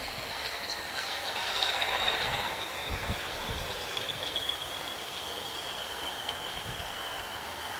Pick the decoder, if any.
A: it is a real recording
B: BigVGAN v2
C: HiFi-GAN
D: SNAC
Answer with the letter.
D